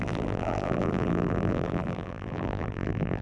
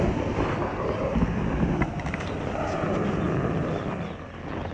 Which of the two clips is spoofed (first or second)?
first